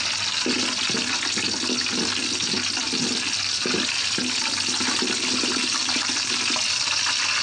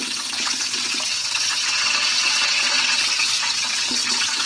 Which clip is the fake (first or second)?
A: second